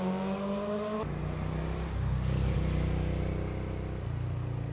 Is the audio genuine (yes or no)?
yes